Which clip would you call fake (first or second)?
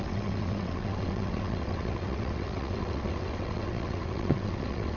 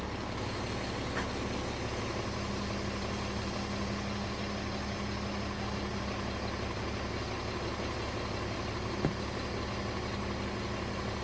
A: first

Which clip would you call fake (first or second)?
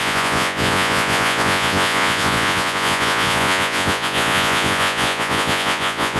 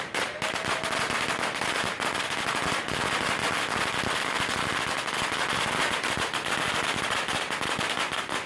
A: first